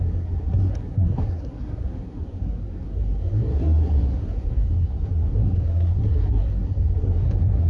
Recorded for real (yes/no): no